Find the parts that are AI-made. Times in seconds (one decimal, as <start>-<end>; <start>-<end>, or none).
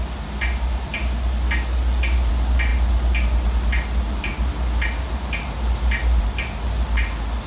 none